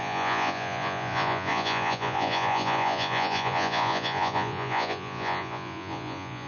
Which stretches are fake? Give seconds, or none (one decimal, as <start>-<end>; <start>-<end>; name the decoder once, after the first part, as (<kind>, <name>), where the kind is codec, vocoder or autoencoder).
0.0-6.5 (vocoder, Vocos)